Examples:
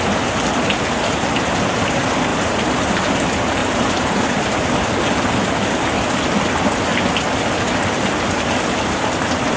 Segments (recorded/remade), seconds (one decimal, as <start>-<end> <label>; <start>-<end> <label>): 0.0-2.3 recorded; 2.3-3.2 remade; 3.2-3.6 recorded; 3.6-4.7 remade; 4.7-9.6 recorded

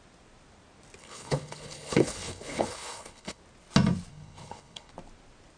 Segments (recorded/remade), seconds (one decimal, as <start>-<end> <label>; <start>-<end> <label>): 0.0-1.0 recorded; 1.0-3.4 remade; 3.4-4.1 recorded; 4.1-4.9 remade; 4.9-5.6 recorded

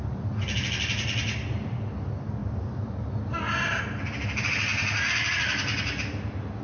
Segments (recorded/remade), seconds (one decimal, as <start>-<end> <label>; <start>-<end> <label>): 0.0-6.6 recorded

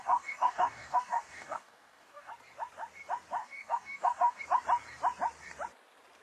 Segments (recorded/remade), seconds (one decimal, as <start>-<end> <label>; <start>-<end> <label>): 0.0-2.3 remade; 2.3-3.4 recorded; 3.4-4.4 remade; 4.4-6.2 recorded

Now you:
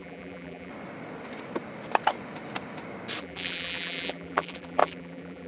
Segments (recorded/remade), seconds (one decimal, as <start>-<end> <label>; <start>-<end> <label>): 0.0-0.7 remade; 0.7-3.2 recorded; 3.2-5.5 remade

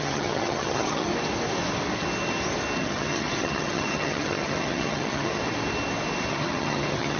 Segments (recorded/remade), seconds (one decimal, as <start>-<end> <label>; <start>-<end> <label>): 0.0-1.1 remade; 1.1-2.8 recorded; 2.8-5.4 remade; 5.4-6.3 recorded; 6.3-7.2 remade